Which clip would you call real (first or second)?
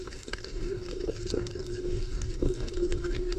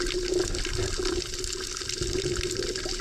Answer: second